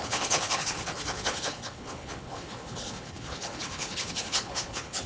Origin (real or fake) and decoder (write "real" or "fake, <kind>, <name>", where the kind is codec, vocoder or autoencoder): fake, codec, HILCodec